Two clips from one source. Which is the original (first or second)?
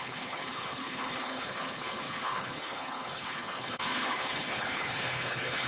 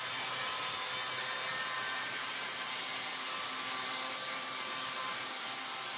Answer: second